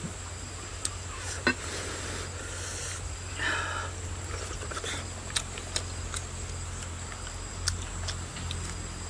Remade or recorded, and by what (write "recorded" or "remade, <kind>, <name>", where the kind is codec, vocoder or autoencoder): recorded